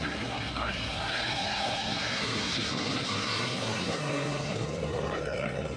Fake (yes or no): yes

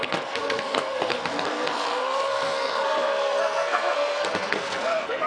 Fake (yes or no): yes